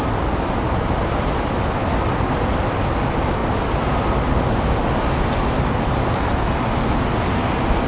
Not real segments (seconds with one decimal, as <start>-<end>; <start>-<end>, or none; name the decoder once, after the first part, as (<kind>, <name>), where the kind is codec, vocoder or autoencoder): none